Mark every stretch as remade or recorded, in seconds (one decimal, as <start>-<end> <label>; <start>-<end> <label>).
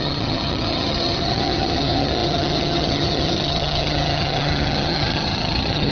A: 0.0-5.9 remade